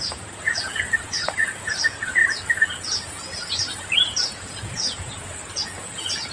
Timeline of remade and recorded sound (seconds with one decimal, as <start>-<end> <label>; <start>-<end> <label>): 0.0-6.3 remade